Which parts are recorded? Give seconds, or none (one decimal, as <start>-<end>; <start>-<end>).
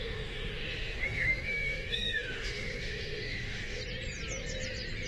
3.8-5.1